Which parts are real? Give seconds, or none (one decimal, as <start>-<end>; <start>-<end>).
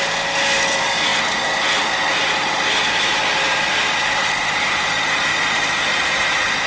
0.0-6.7